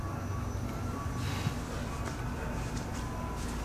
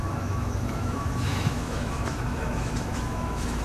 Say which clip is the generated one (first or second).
second